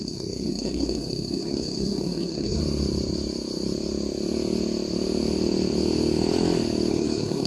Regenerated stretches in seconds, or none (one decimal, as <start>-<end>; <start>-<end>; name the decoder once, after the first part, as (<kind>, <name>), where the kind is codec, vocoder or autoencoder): 0.0-2.6 (codec, SNAC); 6.9-7.5